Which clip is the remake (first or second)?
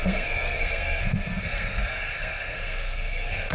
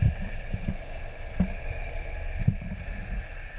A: first